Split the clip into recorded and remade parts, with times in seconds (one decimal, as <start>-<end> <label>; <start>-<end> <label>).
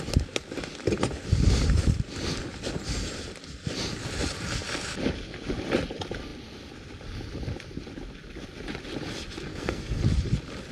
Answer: 0.0-9.5 recorded; 9.5-10.0 remade; 10.0-10.7 recorded